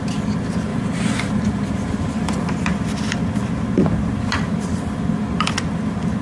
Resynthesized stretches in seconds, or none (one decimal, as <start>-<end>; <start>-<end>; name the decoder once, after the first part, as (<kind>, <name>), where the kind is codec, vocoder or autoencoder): 0.7-2.5 (vocoder, BigVGAN v2)

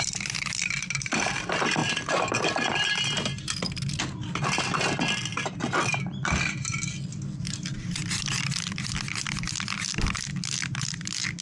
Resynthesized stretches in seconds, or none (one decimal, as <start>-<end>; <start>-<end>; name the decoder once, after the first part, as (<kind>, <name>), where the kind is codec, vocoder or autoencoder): 1.8-3.4 (vocoder, BigVGAN v2); 3.9-6.9

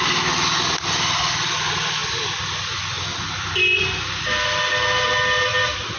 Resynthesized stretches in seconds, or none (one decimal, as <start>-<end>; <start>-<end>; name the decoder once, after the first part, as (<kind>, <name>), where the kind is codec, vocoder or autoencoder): none